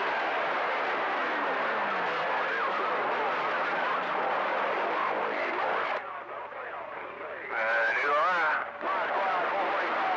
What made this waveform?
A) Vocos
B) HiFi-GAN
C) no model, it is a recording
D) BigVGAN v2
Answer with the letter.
C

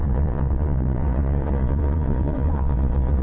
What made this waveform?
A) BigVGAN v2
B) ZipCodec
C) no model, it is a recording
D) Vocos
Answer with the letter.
D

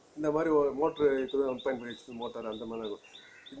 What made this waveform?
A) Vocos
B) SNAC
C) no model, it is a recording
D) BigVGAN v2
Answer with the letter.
C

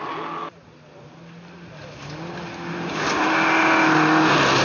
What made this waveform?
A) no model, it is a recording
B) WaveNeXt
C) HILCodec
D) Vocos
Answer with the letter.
A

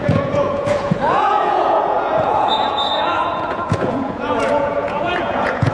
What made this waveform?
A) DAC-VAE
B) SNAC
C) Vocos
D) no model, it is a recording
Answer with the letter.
C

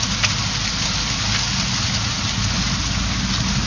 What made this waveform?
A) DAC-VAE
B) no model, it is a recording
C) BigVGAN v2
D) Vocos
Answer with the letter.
B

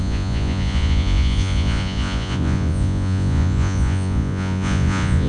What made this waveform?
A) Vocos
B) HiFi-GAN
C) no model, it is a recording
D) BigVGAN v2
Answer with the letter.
A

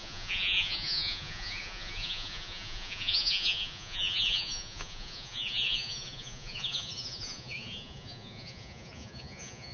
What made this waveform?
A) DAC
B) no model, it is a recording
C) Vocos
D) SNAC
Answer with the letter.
C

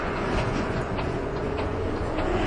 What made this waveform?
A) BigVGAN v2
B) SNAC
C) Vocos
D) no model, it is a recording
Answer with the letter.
C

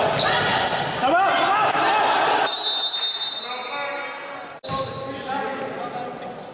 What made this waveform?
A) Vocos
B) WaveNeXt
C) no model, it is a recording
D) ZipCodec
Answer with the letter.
C